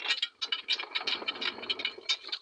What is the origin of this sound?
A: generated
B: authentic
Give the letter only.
B